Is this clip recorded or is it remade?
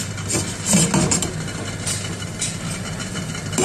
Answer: recorded